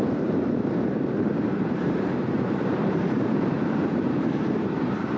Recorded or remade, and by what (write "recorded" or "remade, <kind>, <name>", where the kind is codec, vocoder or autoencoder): remade, vocoder, BigVGAN v2